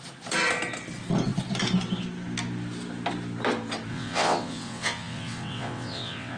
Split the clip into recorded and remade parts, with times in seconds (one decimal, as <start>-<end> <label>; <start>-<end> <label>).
0.0-3.9 recorded; 3.9-6.4 remade